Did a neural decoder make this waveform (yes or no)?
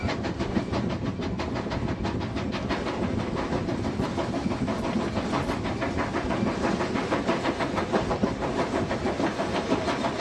no